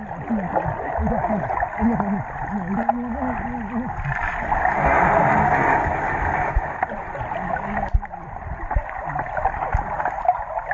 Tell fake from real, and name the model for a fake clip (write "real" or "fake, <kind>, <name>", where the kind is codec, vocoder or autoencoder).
real